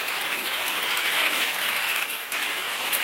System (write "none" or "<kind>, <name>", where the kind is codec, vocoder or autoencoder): codec, DAC